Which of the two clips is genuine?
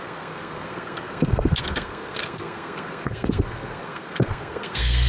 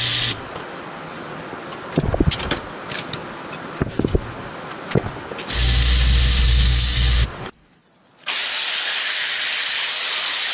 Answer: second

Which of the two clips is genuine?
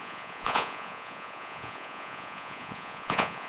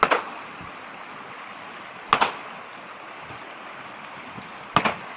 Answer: second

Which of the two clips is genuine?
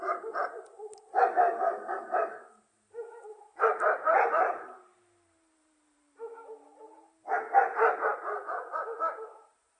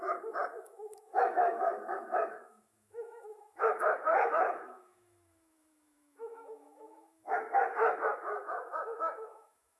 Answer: first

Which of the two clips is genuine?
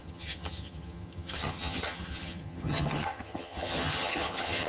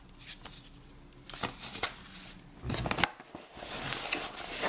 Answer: second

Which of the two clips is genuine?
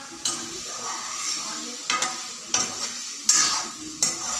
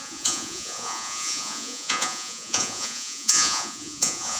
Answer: first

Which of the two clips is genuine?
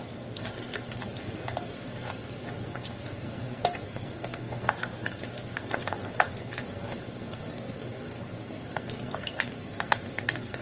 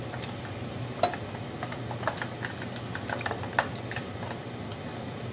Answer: second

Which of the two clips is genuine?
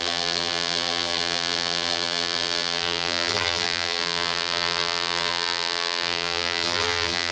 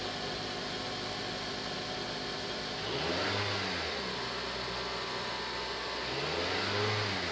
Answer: second